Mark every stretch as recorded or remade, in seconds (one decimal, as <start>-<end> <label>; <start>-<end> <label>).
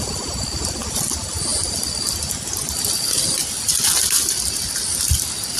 0.0-5.6 recorded